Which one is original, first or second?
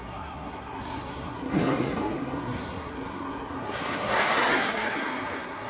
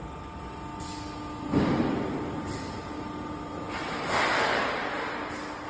second